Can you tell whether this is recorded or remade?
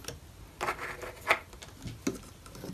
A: recorded